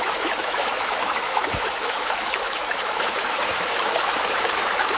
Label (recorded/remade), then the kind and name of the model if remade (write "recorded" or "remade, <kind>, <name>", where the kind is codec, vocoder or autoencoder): remade, autoencoder, DAC-VAE